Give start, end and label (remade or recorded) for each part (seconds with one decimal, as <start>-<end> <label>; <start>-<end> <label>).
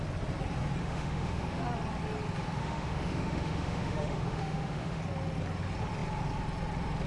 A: 0.0-0.8 recorded; 0.8-1.6 remade; 1.6-2.6 recorded; 2.6-5.0 remade; 5.0-7.1 recorded